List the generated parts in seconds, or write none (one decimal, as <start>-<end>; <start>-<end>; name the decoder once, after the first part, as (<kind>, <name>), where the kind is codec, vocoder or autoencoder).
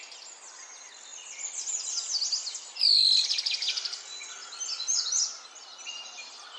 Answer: none